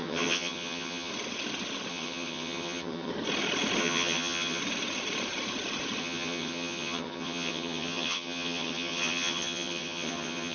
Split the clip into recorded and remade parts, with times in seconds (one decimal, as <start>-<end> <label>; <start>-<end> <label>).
0.0-1.1 remade; 1.1-1.9 recorded; 1.9-3.1 remade; 3.1-3.8 recorded; 3.8-4.6 remade; 4.6-6.0 recorded; 6.0-10.5 remade